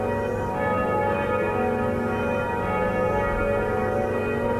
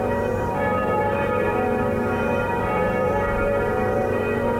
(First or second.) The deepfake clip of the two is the second